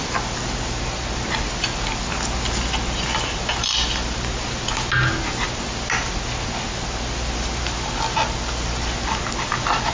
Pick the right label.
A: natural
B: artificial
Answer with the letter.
A